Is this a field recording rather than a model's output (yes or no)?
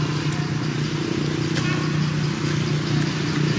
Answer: yes